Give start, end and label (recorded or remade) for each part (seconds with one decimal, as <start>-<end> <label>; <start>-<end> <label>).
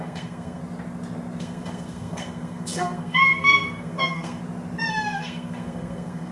0.0-0.6 remade; 0.6-1.4 recorded; 1.4-4.4 remade; 4.4-4.9 recorded; 4.9-6.3 remade